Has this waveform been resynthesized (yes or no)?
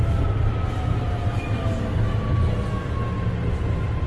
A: no